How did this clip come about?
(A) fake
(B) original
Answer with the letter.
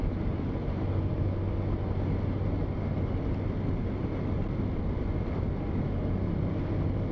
B